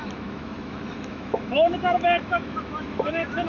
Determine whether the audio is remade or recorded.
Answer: remade